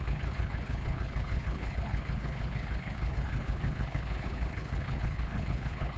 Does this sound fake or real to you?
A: fake